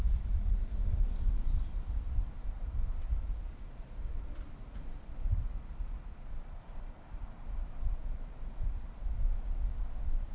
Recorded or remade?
recorded